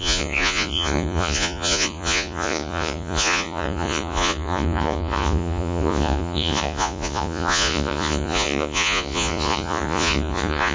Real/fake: fake